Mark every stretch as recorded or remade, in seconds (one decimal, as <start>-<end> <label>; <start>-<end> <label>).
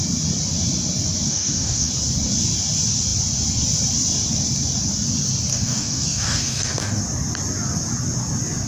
0.0-1.3 recorded; 1.3-1.9 remade; 1.9-5.5 recorded; 5.5-7.0 remade; 7.0-8.7 recorded